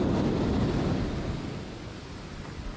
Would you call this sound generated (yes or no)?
no